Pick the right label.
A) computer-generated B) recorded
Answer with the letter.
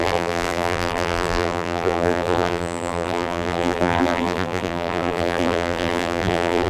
A